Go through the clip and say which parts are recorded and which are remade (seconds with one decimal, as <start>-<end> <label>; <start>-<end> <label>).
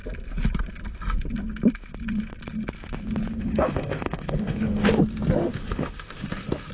0.0-3.4 recorded; 3.4-5.0 remade; 5.0-5.4 recorded; 5.4-6.7 remade